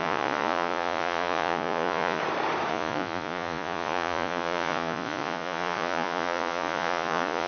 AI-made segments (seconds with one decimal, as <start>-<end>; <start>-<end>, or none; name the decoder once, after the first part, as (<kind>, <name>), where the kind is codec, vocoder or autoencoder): 0.0-2.2 (vocoder, Vocos); 2.7-7.5

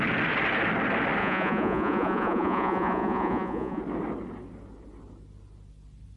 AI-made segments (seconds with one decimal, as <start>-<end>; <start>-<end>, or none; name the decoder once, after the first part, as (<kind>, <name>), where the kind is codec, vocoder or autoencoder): 1.2-3.8 (vocoder, Vocos)

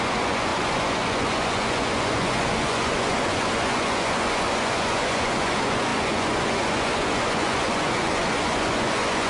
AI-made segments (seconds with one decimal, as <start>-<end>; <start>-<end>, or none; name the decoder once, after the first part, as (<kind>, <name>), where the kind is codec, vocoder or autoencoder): 0.0-9.3 (vocoder, Vocos)

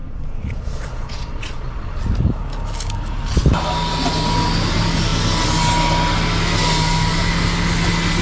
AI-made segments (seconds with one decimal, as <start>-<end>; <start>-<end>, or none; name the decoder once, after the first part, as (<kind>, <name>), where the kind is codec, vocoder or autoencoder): 0.0-2.0 (vocoder, Vocos)

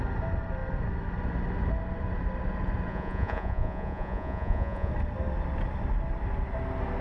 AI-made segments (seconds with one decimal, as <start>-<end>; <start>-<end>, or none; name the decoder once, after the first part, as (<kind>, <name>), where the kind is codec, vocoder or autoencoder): 2.9-4.9 (vocoder, Vocos)